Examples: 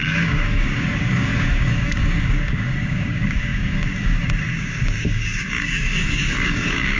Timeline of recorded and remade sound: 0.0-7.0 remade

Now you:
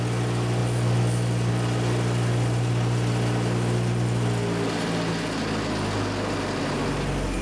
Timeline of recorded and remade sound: 0.0-7.4 recorded

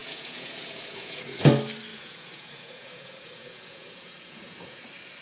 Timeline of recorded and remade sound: 0.0-1.4 remade; 1.4-1.9 recorded; 1.9-4.8 remade; 4.8-5.2 recorded

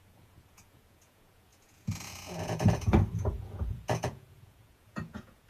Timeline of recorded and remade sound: 0.0-5.5 remade

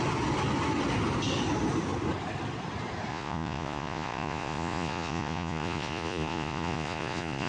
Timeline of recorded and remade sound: 0.0-3.1 recorded; 3.1-7.5 remade

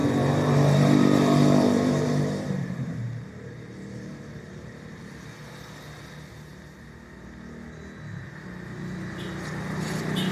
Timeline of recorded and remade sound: 0.0-5.1 remade; 5.1-10.3 recorded

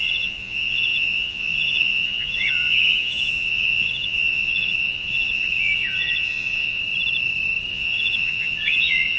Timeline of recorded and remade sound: 0.0-6.8 remade; 6.8-7.7 recorded; 7.7-9.2 remade

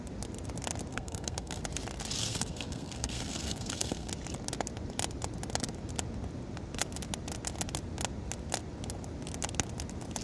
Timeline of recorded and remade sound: 0.0-0.9 recorded; 0.9-1.6 remade; 1.6-2.2 recorded; 2.2-4.1 remade; 4.1-10.2 recorded